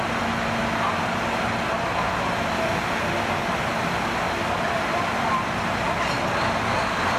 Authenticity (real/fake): real